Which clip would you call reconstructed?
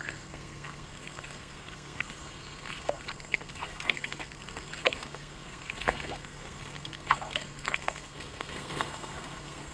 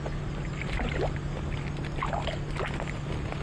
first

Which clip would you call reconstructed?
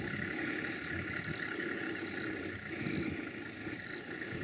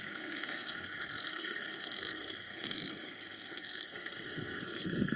second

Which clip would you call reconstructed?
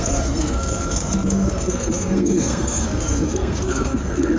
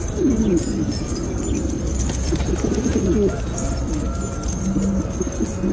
first